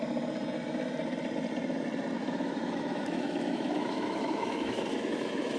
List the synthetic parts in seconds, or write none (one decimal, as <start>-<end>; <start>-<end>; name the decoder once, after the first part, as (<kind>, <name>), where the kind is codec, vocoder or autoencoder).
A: 2.2-5.6 (autoencoder, DAC-VAE)